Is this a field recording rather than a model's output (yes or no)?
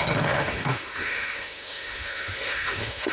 no